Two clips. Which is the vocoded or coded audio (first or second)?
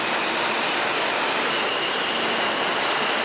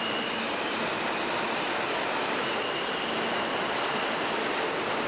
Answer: second